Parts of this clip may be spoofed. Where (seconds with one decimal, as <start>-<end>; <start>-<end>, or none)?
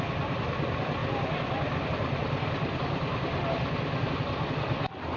none